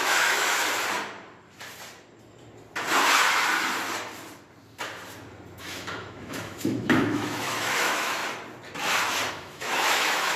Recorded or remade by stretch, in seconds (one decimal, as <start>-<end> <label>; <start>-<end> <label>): 0.0-0.6 remade; 0.6-5.6 recorded; 5.6-8.2 remade; 8.2-9.3 recorded; 9.3-10.4 remade